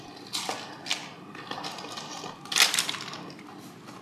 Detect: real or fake real